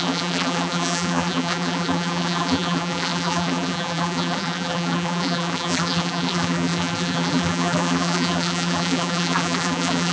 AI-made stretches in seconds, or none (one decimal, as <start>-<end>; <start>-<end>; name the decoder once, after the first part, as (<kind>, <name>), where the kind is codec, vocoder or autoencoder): 0.0-10.1 (vocoder, BigVGAN v2)